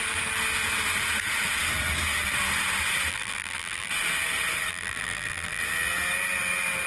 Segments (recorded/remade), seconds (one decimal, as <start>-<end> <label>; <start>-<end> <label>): 0.0-3.1 recorded; 3.1-3.9 remade; 3.9-4.7 recorded; 4.7-5.6 remade; 5.6-6.9 recorded